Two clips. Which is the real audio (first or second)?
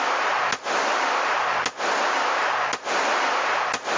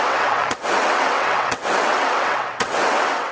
first